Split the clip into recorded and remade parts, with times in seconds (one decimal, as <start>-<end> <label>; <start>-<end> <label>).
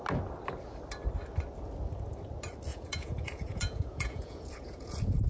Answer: 0.0-2.7 recorded; 2.7-5.3 remade